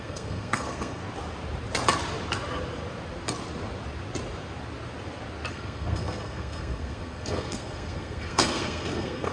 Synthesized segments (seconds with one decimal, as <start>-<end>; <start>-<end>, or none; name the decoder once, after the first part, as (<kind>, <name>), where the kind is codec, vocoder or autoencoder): 0.0-1.0 (codec, SNAC); 5.5-9.3